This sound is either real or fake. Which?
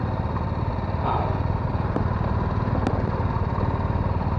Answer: real